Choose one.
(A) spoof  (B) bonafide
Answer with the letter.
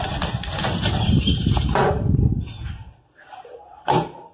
A